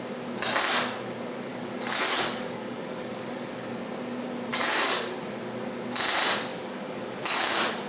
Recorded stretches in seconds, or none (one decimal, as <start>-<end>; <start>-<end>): 0.0-1.5; 3.7-4.5; 5.4-6.5